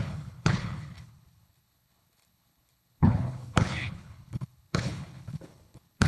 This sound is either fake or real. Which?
fake